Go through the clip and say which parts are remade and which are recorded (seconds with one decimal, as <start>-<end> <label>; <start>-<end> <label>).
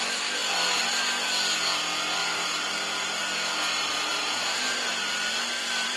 0.0-0.4 recorded; 0.4-0.9 remade; 0.9-2.2 recorded; 2.2-3.2 remade; 3.2-4.1 recorded; 4.1-6.0 remade